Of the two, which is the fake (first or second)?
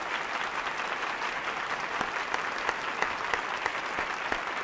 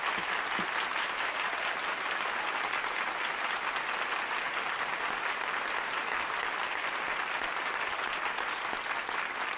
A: first